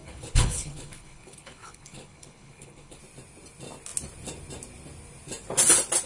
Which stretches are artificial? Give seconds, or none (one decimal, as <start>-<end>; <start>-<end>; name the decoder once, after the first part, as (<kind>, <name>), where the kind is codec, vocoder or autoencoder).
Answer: 0.0-3.0 (codec, HILCodec)